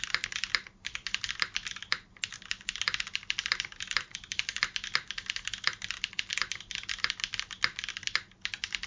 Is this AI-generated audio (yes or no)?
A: no